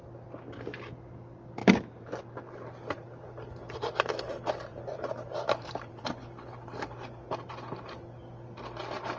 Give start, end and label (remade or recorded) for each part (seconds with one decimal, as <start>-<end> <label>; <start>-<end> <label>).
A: 0.0-1.6 recorded; 1.6-2.2 remade; 2.2-4.7 recorded; 4.7-6.1 remade; 6.1-9.2 recorded